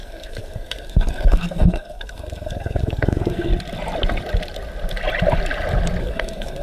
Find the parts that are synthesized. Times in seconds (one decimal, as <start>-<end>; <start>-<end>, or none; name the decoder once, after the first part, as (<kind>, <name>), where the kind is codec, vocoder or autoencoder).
0.0-3.5 (codec, SNAC); 6.0-6.6